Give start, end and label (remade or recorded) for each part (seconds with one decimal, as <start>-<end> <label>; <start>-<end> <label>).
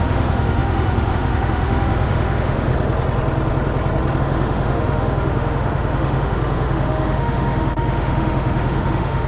0.0-2.7 remade; 2.7-4.2 recorded; 4.2-9.3 remade